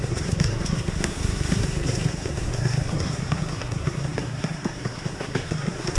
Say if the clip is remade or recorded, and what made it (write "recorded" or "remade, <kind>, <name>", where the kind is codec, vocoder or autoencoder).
remade, codec, SNAC